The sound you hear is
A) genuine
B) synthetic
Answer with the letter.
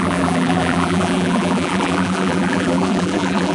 B